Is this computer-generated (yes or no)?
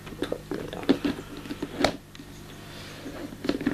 no